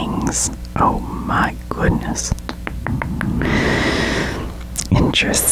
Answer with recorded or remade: recorded